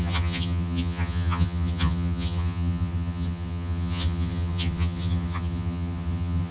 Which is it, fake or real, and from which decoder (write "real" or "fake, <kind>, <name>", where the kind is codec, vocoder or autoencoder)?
fake, vocoder, HiFi-GAN